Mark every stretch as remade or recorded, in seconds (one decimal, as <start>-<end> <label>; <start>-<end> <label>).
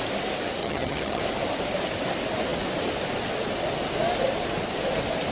0.0-0.6 recorded; 0.6-1.2 remade; 1.2-5.3 recorded